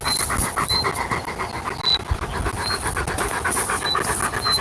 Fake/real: real